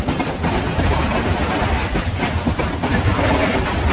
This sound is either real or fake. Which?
real